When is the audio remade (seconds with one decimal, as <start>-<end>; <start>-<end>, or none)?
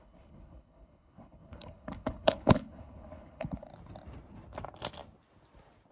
0.0-3.7